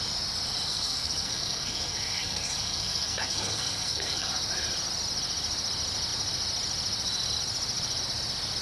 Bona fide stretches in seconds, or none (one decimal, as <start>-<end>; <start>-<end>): 0.0-0.7; 4.3-8.6